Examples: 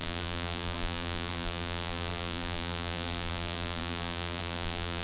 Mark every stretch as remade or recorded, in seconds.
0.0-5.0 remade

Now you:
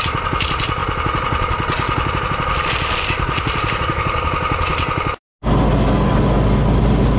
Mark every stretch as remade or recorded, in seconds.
0.0-7.2 recorded